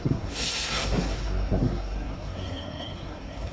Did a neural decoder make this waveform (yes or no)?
yes